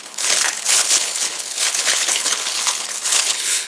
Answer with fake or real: fake